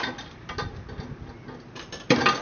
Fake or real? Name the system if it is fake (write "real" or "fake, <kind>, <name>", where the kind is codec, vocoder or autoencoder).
real